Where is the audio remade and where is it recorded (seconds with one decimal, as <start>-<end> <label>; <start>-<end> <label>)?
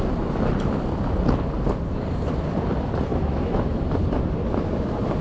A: 0.0-3.1 recorded; 3.1-3.8 remade; 3.8-5.2 recorded